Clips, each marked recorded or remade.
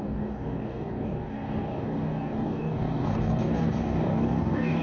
remade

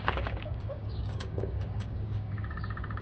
remade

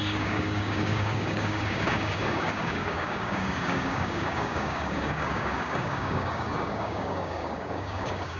remade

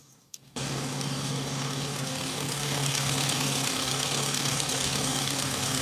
remade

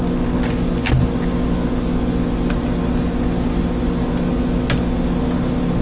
recorded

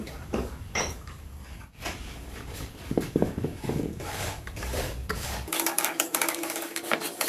remade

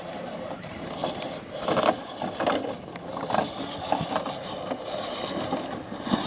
recorded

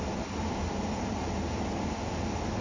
recorded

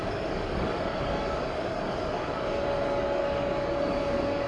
remade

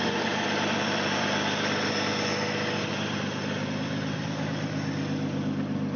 recorded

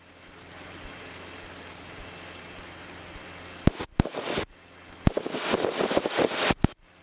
recorded